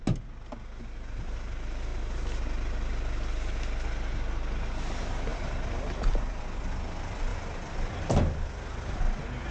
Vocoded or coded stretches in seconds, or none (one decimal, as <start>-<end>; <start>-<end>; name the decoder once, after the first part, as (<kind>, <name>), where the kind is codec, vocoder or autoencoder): 5.3-6.4 (vocoder, BigVGAN v2); 7.3-8.0